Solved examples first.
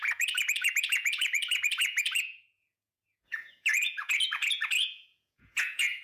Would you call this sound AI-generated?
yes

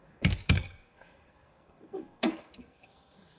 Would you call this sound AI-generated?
yes